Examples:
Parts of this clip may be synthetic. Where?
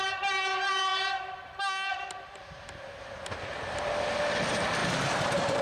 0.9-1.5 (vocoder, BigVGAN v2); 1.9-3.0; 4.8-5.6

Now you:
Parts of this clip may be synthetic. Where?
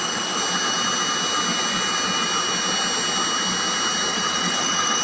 4.1-5.0 (vocoder, BigVGAN v2)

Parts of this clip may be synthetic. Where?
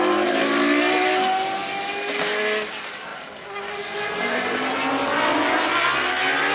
none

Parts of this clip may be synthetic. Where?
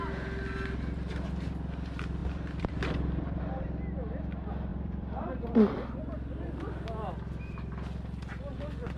2.2-3.4 (vocoder, BigVGAN v2); 4.7-5.8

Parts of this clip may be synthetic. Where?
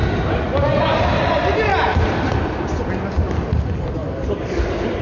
none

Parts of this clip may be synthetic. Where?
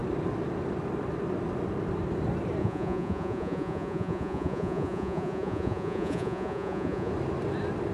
2.6-7.1 (vocoder, Vocos)